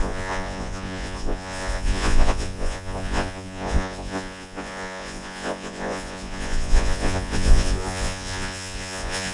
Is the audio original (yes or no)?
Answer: no